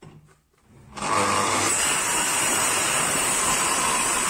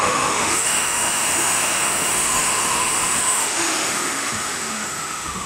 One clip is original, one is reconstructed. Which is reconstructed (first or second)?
second